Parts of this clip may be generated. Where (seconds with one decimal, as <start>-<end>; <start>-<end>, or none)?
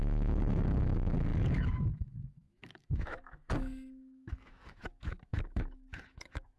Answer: 0.0-6.6